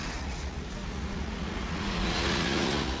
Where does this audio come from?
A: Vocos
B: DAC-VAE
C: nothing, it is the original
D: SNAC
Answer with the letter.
A